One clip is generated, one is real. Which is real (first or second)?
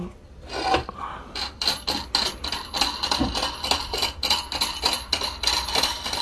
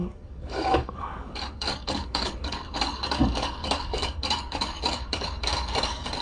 first